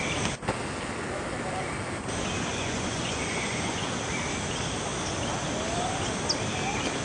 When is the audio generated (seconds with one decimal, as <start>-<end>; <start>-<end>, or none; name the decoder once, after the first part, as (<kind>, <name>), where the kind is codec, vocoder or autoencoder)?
2.5-3.9 (vocoder, Vocos)